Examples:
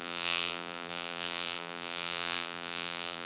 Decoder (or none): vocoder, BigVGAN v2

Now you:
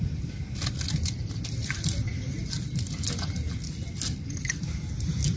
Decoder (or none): none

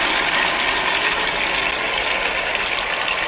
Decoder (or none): none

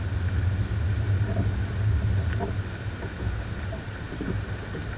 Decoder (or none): none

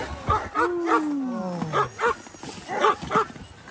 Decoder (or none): none